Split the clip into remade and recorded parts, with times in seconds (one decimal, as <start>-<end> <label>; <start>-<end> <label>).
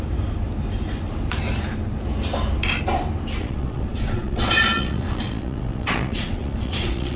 0.0-3.4 recorded; 3.4-7.2 remade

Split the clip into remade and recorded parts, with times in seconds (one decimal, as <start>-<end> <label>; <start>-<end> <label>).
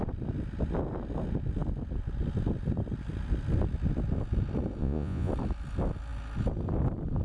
0.0-4.8 recorded; 4.8-5.3 remade; 5.3-7.2 recorded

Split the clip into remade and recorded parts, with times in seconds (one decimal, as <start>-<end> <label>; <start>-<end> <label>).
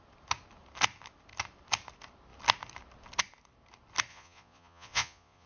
0.0-4.1 recorded; 4.1-5.5 remade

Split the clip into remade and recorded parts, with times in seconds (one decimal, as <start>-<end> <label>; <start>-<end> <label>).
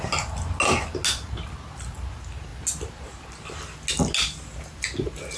0.0-5.4 recorded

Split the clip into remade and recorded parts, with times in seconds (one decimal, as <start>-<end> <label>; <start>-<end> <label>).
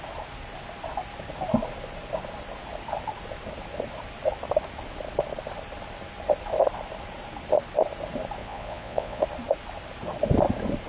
0.0-8.4 recorded; 8.4-9.2 remade; 9.2-10.9 recorded